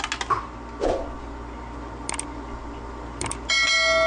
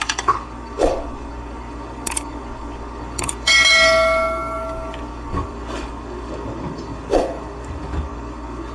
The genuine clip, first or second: first